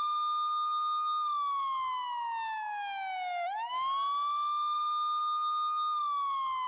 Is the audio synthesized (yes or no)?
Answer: no